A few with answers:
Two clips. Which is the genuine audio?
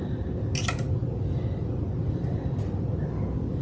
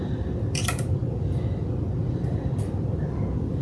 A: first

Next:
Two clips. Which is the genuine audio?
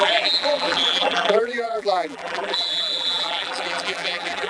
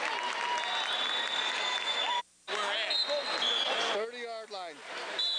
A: second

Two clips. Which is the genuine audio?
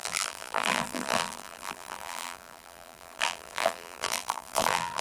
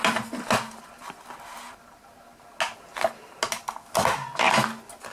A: second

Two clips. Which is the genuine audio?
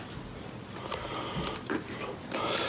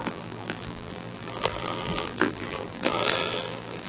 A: first